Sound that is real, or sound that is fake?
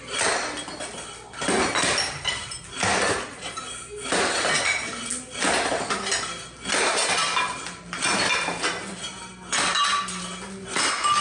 real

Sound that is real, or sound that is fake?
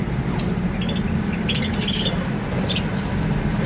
real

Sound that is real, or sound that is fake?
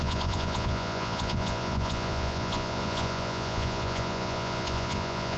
fake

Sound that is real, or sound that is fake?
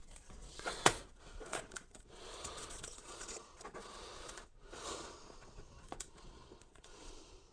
fake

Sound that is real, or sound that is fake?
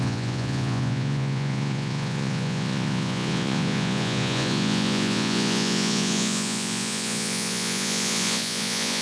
fake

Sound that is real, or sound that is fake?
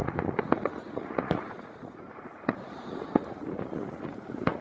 fake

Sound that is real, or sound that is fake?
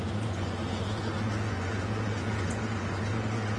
fake